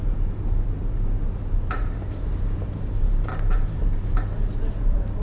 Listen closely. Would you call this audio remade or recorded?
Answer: remade